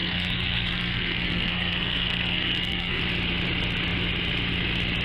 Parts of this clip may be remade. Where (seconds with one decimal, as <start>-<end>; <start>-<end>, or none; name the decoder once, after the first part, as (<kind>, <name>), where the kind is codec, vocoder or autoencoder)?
0.0-3.0 (codec, SNAC)